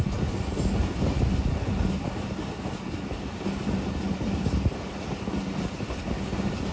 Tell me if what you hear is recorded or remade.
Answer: recorded